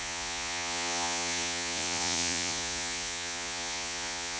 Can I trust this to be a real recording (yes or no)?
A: no